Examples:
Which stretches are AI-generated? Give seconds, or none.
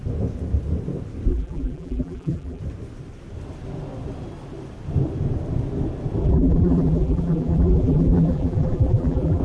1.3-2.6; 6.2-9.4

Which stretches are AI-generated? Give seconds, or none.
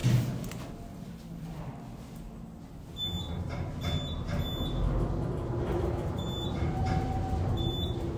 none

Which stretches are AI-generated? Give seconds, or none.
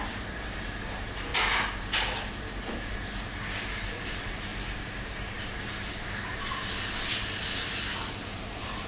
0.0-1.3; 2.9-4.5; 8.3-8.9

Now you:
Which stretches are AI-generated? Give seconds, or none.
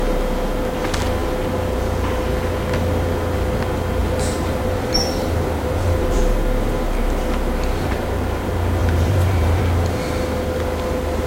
4.0-6.2; 8.8-9.6